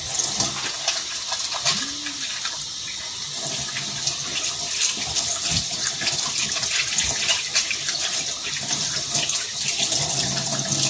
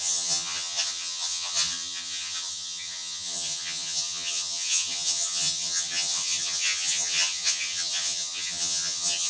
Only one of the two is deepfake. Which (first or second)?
second